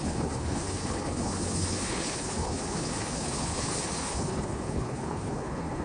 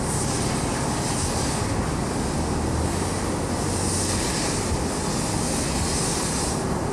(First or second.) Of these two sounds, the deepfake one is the first